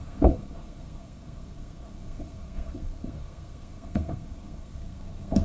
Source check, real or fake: fake